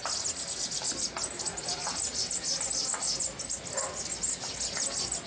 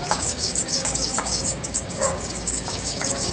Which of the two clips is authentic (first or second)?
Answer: first